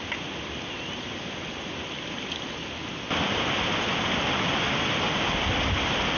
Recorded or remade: recorded